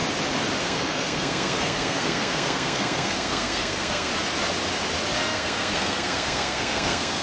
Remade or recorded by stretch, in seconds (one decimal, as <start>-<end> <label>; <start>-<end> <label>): 0.0-0.6 recorded; 0.6-4.1 remade; 4.1-5.3 recorded; 5.3-7.2 remade